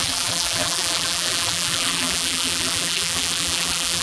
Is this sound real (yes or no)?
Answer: no